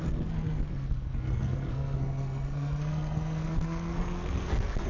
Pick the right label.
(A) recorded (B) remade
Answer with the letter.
B